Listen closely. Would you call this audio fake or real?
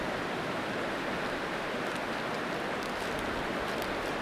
real